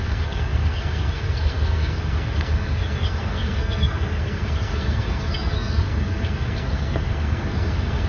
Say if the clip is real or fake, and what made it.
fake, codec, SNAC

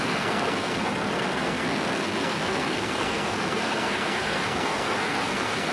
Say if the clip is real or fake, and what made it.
fake, codec, SNAC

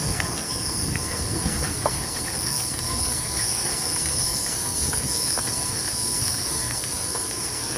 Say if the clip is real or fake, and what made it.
fake, codec, SNAC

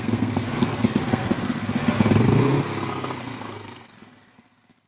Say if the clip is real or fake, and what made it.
fake, codec, SNAC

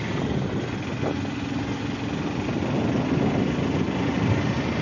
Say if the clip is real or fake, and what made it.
real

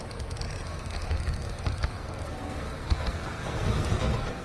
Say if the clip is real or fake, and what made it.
fake, codec, SNAC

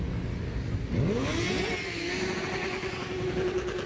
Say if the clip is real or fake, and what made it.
real